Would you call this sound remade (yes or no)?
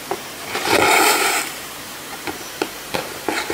yes